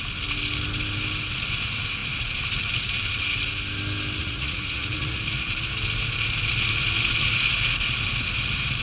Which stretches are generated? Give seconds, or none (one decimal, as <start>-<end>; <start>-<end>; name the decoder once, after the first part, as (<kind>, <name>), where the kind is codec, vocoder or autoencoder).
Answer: 4.2-5.2 (vocoder, Vocos)